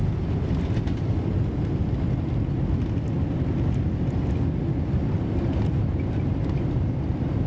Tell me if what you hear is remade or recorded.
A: recorded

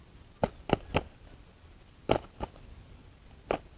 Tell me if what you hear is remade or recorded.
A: recorded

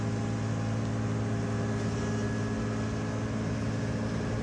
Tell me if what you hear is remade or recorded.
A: recorded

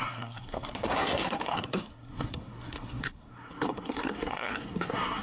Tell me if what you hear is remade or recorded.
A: remade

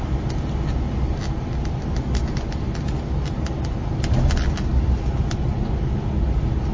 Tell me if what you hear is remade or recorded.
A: recorded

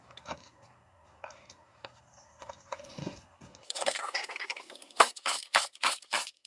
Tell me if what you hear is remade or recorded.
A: remade